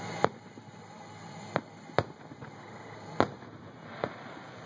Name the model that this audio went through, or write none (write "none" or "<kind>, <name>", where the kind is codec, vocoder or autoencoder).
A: none